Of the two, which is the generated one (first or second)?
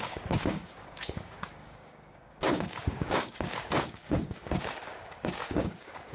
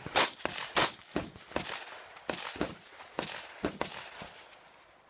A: first